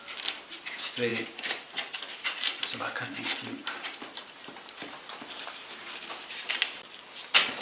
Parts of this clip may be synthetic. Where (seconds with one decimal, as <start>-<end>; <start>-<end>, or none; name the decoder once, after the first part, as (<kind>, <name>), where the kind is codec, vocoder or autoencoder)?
1.1-2.8 (vocoder, BigVGAN v2); 3.6-6.8